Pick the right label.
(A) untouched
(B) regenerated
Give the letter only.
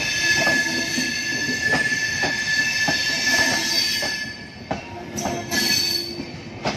A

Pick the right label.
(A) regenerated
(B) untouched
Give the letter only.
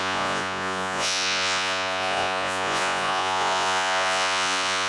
A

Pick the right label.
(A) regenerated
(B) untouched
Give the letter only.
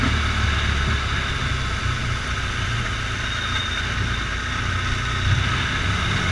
B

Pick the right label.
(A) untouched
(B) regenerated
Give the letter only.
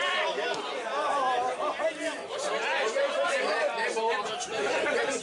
B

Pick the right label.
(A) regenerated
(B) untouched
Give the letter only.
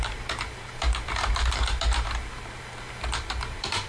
A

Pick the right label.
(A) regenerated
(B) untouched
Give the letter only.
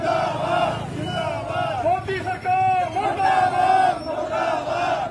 B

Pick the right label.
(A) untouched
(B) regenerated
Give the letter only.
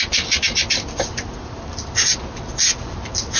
A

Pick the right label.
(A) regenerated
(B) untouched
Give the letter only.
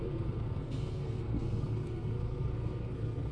A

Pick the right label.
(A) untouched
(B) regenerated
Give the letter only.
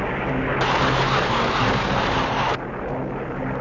A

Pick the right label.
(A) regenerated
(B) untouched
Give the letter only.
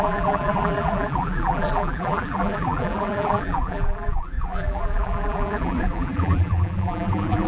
A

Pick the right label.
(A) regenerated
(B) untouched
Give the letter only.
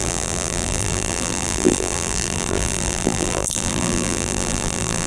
A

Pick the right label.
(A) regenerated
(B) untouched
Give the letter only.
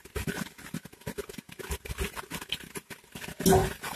B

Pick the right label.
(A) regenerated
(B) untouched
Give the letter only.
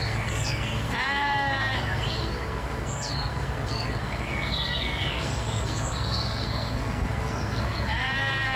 A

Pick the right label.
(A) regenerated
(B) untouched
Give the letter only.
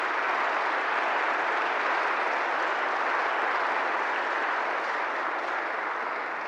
B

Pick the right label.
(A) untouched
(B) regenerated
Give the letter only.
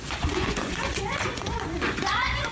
B